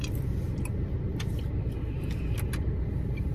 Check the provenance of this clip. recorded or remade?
recorded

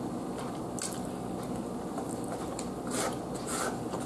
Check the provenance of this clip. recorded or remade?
recorded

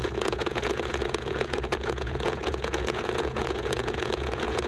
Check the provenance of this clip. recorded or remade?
remade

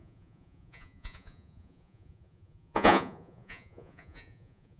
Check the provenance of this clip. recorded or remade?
remade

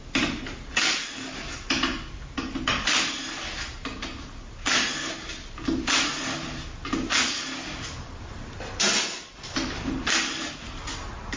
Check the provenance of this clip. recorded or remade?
recorded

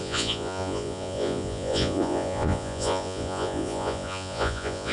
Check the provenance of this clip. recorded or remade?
remade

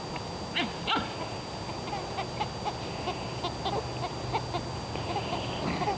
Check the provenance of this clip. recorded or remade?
recorded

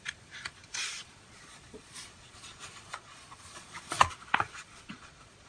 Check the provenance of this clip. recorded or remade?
remade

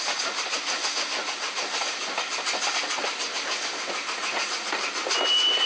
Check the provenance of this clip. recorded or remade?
recorded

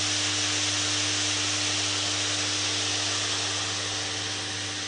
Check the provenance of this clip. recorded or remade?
recorded